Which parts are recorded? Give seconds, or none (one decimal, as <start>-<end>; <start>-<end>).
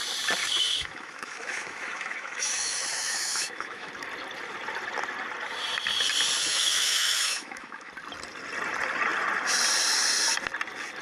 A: 0.0-0.4; 3.9-6.4; 7.9-11.0